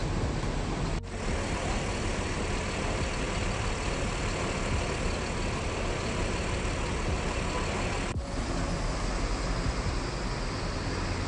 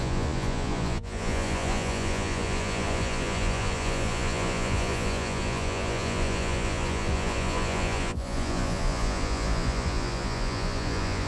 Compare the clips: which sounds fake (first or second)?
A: second